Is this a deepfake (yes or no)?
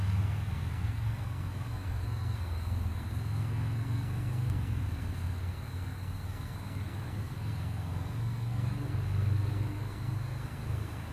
yes